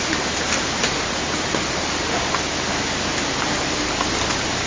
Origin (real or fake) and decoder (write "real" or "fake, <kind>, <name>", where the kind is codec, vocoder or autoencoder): real